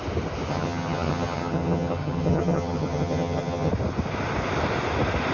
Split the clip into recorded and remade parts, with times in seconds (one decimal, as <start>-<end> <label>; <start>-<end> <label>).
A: 0.0-0.5 recorded; 0.5-3.7 remade; 3.7-5.3 recorded